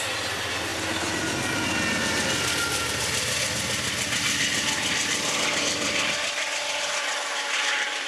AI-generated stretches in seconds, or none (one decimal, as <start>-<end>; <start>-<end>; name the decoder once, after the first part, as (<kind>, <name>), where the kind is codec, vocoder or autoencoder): none